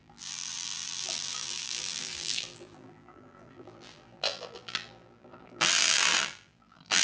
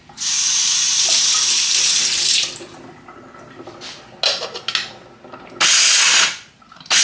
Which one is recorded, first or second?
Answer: second